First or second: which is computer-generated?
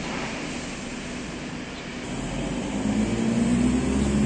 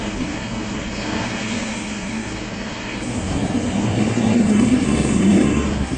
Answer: second